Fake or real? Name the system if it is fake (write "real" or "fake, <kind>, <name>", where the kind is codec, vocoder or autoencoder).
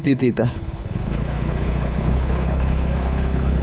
fake, codec, HILCodec